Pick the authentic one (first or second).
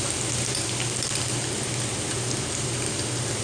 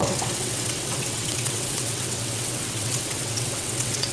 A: first